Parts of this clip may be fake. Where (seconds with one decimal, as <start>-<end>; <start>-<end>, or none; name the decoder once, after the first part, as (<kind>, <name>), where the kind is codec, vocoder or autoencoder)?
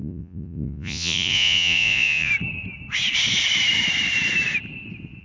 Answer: 0.0-2.3 (vocoder, Vocos)